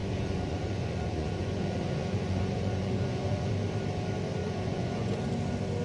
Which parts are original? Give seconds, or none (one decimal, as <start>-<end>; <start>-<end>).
3.5-4.4; 5.3-5.8